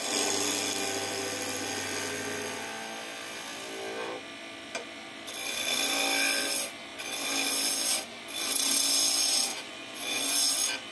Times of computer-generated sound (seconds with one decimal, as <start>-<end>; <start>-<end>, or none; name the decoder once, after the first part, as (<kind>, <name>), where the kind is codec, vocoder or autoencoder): 9.5-10.5 (vocoder, Vocos)